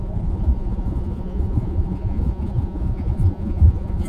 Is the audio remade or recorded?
remade